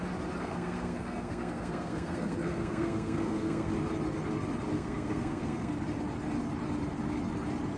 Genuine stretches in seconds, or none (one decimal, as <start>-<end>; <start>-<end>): 0.0-0.4; 3.7-4.7; 5.7-7.8